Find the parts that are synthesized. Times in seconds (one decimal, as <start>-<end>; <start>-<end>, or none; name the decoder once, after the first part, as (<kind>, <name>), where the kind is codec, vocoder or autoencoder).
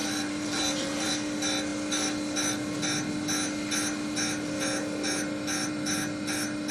0.0-1.1 (vocoder, BigVGAN v2)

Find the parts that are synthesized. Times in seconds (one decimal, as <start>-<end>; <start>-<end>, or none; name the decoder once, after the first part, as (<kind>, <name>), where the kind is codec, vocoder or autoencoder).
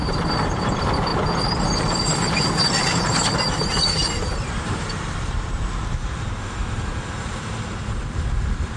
0.6-8.8 (vocoder, BigVGAN v2)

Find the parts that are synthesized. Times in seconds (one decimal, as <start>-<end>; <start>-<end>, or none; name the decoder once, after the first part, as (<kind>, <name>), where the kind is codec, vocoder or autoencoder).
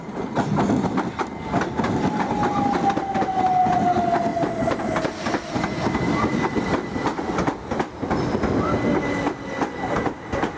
4.3-4.8 (vocoder, BigVGAN v2); 7.1-8.1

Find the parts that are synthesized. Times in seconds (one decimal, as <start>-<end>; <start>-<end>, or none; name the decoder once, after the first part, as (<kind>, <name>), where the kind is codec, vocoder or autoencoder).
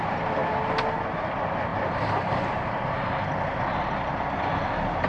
1.7-3.1 (vocoder, BigVGAN v2)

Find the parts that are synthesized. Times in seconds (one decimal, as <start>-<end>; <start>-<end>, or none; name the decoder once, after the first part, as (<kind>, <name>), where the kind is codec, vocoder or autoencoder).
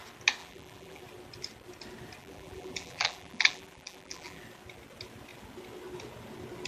0.4-1.0 (vocoder, BigVGAN v2); 2.2-4.4